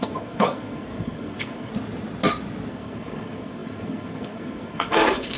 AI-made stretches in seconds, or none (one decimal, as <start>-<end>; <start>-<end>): 0.0-1.7; 2.7-5.4